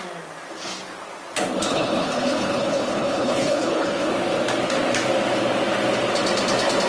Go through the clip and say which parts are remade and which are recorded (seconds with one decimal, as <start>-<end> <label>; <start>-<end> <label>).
0.0-1.7 recorded; 1.7-4.1 remade; 4.1-6.9 recorded